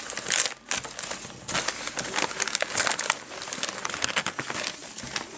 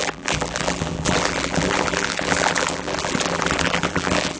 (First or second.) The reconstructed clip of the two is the second